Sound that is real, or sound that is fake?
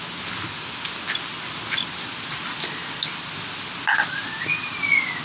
real